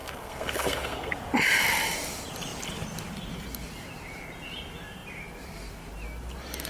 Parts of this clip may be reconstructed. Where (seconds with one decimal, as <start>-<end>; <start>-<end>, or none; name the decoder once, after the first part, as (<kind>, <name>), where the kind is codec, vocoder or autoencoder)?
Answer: 0.0-1.1 (codec, SNAC)